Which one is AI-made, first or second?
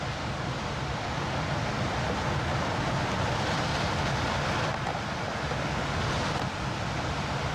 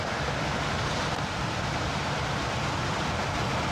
second